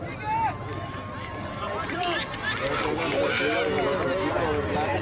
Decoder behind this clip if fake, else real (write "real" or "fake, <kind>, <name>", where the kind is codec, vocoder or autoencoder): real